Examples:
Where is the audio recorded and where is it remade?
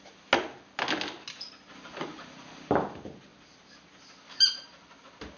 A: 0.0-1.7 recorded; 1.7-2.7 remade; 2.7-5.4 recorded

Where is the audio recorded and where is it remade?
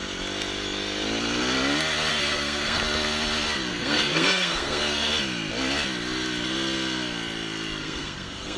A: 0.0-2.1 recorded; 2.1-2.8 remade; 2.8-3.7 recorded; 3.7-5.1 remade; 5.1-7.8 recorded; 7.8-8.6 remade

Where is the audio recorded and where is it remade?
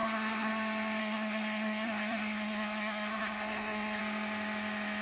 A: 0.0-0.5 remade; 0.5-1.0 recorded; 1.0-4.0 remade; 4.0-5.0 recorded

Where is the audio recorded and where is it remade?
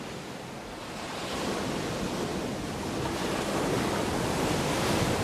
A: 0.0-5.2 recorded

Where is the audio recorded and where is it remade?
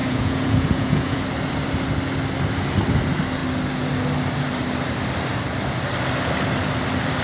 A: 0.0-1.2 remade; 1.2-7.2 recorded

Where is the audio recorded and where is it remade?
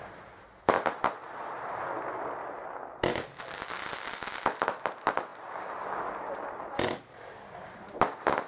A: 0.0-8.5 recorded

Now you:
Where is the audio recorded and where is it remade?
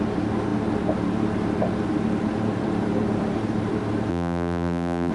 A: 0.0-4.1 recorded; 4.1-5.1 remade